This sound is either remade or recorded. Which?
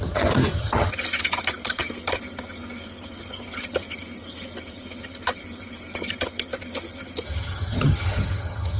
remade